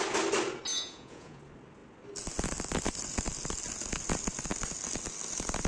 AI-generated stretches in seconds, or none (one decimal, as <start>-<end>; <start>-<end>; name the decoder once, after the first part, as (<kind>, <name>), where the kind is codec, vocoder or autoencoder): 0.7-1.4 (vocoder, Vocos)

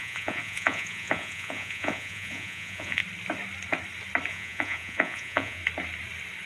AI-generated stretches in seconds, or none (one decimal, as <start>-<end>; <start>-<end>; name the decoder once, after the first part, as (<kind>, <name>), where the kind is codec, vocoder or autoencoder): 0.0-3.0 (vocoder, Vocos); 4.3-5.6

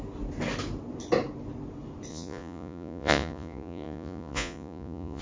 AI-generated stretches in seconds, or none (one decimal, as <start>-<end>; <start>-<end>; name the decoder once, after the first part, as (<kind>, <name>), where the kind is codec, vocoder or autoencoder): 2.1-5.2 (vocoder, Vocos)

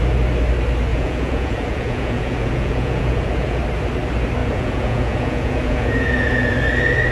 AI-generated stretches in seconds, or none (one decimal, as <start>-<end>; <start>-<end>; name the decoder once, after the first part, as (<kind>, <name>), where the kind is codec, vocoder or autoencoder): 0.9-3.6 (vocoder, Vocos); 4.4-6.5